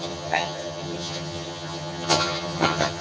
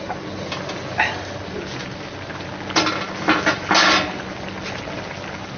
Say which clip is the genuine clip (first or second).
second